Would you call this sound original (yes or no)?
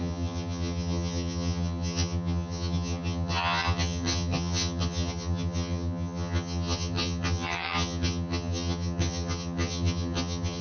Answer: no